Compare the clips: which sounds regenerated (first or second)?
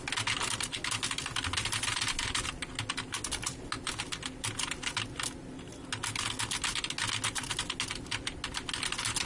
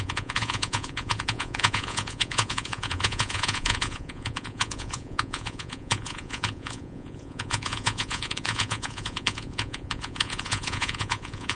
second